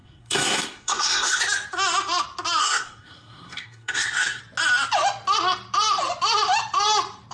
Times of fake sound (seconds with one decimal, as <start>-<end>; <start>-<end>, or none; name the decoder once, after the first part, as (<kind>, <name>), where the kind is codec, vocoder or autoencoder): 0.0-1.4 (codec, SNAC); 2.6-4.4